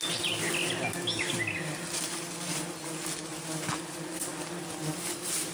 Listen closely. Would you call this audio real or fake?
real